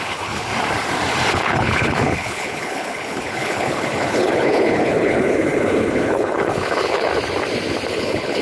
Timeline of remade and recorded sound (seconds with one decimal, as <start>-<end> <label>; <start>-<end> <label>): 0.0-0.5 remade; 0.5-1.3 recorded; 1.3-7.1 remade; 7.1-7.9 recorded; 7.9-8.4 remade

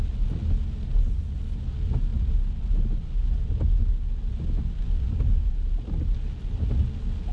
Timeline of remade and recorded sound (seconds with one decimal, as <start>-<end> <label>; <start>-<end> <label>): 0.0-7.3 recorded

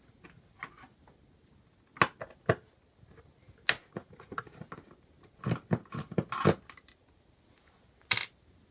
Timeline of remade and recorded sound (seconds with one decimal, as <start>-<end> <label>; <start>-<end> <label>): 0.0-3.8 recorded; 3.8-4.4 remade; 4.4-8.7 recorded

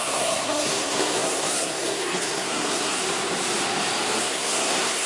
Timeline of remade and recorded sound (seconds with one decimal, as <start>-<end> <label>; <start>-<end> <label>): 0.0-3.0 remade; 3.0-4.2 recorded; 4.2-5.1 remade

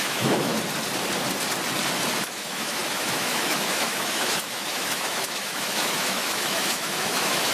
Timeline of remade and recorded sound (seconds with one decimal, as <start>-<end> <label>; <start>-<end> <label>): 0.0-0.5 remade; 0.5-2.2 recorded; 2.2-7.5 remade

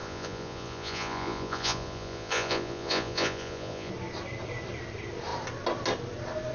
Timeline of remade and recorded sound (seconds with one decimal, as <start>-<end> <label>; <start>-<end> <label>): 0.0-3.9 remade; 3.9-6.5 recorded

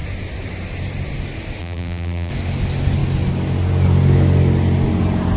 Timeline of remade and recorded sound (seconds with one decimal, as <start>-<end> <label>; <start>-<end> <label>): 0.0-1.6 recorded; 1.6-2.3 remade; 2.3-5.4 recorded